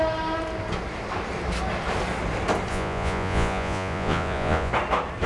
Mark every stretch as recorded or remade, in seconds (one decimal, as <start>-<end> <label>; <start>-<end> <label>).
0.0-2.7 recorded; 2.7-4.7 remade; 4.7-5.3 recorded